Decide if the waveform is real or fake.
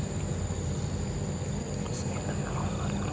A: real